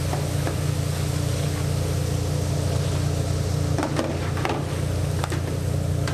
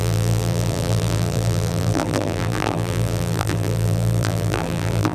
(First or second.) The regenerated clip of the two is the second